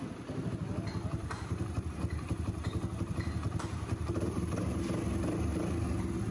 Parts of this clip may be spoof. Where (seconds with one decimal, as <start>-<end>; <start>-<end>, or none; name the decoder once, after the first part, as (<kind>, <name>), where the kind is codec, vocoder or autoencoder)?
1.2-5.0 (vocoder, BigVGAN v2)